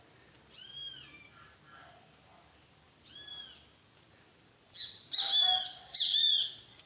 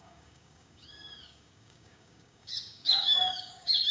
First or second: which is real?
first